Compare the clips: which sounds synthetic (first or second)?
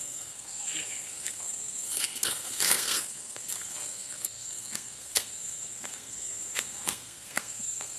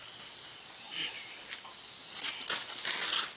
first